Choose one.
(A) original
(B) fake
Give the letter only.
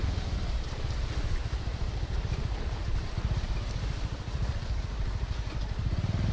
B